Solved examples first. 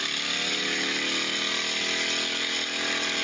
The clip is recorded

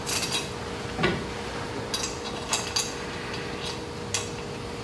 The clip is recorded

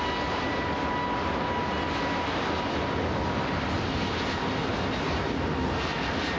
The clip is recorded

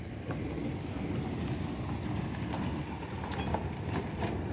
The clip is recorded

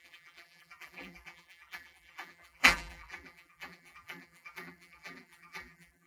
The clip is remade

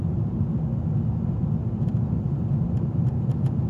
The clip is recorded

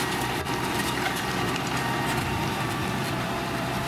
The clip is remade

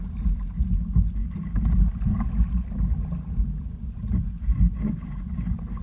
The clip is recorded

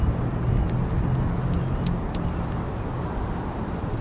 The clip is recorded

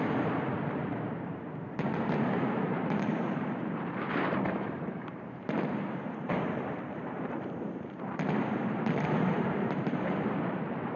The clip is remade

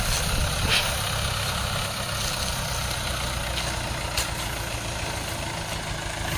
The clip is recorded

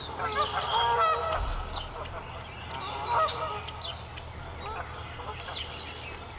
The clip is recorded